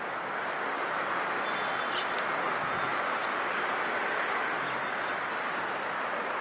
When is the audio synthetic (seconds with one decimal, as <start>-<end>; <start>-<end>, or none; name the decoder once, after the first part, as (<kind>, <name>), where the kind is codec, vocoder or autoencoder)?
none